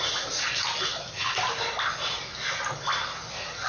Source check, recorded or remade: recorded